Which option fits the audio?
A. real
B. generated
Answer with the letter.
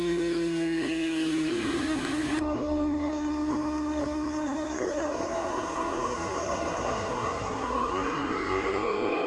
B